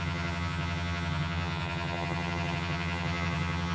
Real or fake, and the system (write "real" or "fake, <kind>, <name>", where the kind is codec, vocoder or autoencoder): fake, vocoder, HiFi-GAN